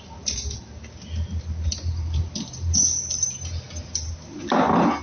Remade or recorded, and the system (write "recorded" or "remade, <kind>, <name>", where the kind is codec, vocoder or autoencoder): recorded